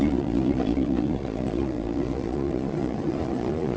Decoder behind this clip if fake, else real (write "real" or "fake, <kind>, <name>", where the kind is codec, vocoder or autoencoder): fake, vocoder, Vocos